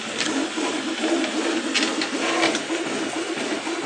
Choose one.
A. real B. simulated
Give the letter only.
A